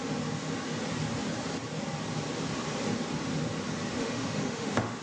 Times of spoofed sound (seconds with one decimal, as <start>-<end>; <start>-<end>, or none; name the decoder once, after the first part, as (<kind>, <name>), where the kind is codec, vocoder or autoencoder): 3.9-5.0 (autoencoder, DAC-VAE)

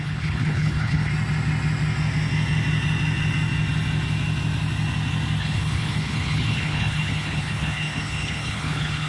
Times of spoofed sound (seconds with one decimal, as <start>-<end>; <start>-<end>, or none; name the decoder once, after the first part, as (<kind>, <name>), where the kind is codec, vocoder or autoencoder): 0.0-1.1 (codec, HILCodec); 5.4-9.1

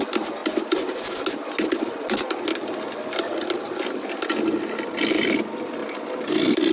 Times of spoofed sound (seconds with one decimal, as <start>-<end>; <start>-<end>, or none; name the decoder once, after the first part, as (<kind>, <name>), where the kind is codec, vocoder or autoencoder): none

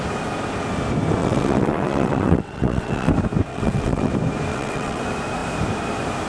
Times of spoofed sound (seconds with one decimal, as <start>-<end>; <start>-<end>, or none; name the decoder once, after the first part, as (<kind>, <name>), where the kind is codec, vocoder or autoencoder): 1.2-3.1 (vocoder, WaveNeXt); 3.5-4.1; 4.5-5.0

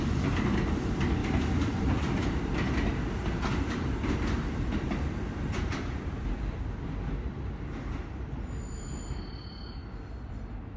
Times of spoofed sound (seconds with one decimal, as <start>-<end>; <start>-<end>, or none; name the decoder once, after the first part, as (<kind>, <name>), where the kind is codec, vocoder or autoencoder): 1.2-2.4 (vocoder, BigVGAN v2)

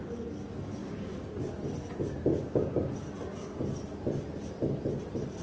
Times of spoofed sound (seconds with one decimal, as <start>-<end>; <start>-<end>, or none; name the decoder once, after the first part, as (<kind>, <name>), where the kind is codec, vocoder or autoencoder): 0.8-1.5 (codec, DAC); 2.3-2.8

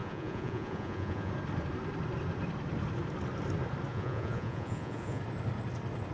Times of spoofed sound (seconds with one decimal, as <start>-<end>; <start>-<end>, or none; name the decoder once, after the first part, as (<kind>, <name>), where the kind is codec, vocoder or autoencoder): 0.0-1.3 (vocoder, Vocos); 3.9-5.2